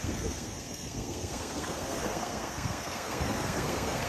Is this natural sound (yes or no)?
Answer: no